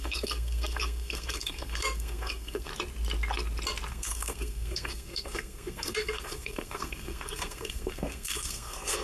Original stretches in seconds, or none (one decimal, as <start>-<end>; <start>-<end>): 2.7-3.9